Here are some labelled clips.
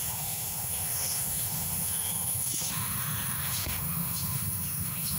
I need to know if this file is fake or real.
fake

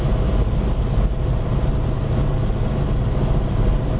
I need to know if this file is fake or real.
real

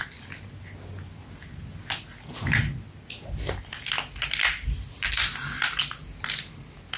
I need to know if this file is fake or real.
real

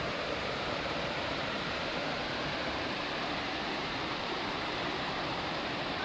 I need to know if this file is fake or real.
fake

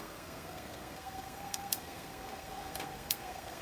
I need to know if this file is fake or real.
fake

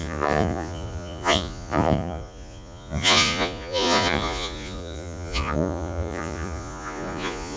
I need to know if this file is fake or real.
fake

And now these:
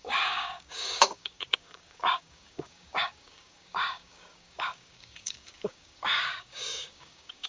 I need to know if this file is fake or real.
fake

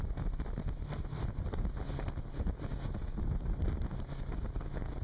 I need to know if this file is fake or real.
real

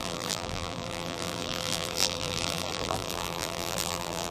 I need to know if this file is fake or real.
fake